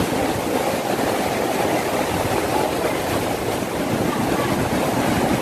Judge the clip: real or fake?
real